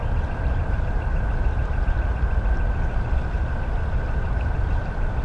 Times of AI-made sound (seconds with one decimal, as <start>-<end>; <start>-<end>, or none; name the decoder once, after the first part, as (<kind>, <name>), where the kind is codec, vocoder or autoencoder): none